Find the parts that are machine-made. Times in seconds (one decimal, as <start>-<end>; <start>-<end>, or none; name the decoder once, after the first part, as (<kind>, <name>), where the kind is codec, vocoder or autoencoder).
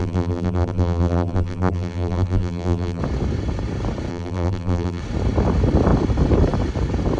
0.0-3.0 (vocoder, BigVGAN v2); 4.1-5.0